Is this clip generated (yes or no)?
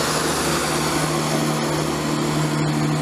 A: no